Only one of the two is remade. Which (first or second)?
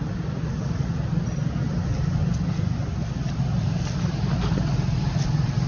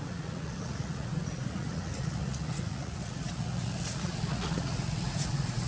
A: second